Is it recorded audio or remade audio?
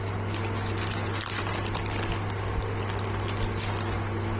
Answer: recorded